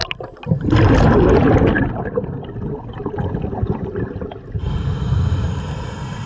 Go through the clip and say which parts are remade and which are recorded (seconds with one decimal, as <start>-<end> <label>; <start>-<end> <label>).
0.0-6.3 recorded